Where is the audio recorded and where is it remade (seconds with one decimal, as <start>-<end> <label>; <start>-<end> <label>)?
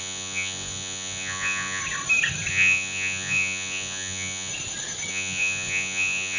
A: 0.0-1.8 remade; 1.8-2.5 recorded; 2.5-4.5 remade; 4.5-5.1 recorded; 5.1-6.4 remade